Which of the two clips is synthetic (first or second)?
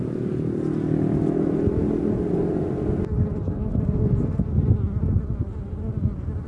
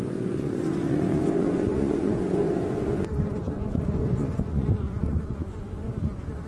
second